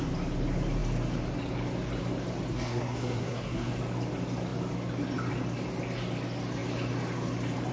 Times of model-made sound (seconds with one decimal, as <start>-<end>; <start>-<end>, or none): 2.5-3.7